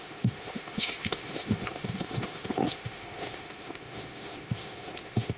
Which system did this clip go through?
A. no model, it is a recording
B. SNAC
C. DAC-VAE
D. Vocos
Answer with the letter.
C